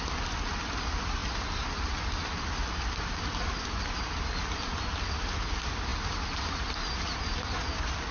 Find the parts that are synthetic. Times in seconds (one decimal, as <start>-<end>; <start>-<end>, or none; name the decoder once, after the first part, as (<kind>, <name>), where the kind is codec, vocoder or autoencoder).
none